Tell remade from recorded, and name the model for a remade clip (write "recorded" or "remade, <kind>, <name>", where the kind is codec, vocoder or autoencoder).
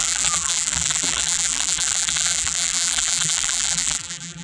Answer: remade, vocoder, BigVGAN v2